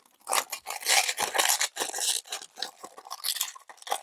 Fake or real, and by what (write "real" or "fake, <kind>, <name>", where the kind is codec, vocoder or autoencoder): real